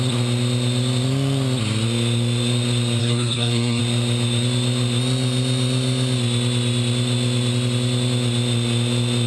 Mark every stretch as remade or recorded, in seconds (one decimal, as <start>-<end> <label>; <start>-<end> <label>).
0.0-3.0 recorded; 3.0-3.8 remade; 3.8-9.3 recorded